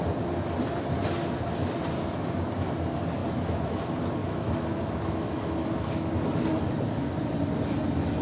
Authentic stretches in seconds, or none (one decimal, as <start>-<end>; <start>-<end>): 0.0-3.2; 3.8-4.2; 6.1-8.2